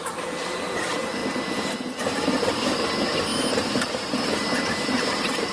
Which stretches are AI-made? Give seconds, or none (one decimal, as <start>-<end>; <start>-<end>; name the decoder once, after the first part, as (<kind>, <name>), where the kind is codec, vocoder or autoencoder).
0.0-3.3 (vocoder, BigVGAN v2); 4.7-5.5